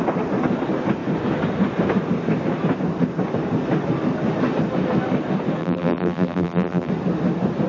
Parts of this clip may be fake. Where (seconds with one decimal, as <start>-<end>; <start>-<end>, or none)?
5.6-6.9